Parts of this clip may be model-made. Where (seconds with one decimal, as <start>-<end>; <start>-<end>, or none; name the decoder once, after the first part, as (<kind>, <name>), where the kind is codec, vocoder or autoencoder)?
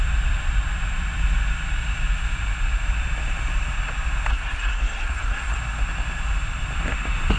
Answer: 4.3-5.6 (codec, SNAC)